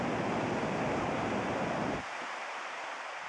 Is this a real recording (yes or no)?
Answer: yes